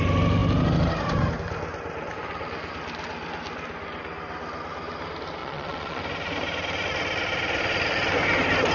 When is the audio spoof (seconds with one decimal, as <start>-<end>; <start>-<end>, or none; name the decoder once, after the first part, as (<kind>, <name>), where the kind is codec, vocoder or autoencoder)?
5.4-6.0 (vocoder, Vocos)